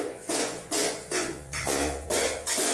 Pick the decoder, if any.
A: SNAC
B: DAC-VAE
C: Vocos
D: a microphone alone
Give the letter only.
C